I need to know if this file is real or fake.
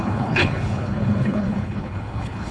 fake